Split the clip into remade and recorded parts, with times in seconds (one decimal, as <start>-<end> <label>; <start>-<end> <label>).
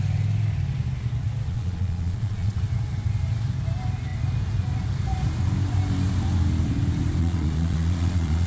0.0-1.5 recorded; 1.5-2.6 remade; 2.6-7.2 recorded; 7.2-8.5 remade